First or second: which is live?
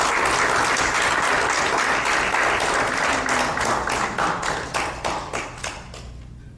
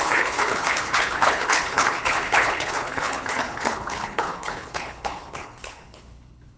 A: first